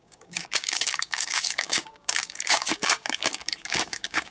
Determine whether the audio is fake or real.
fake